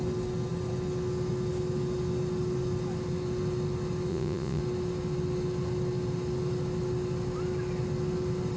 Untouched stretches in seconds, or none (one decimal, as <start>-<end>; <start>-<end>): 0.0-4.1; 4.6-8.6